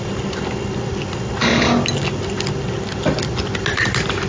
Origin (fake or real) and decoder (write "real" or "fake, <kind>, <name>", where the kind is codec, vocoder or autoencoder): real